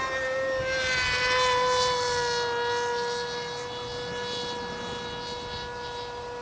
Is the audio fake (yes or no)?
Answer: no